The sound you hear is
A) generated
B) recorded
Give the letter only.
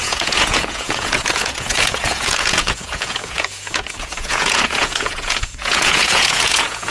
A